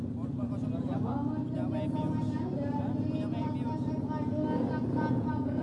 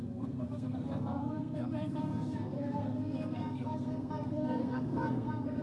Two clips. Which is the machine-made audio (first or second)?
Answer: second